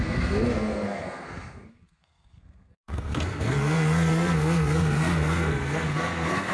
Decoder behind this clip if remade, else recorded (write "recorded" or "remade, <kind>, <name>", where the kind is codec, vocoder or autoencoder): remade, codec, SNAC